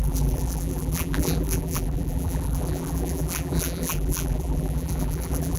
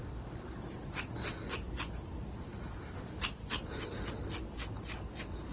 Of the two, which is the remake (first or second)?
first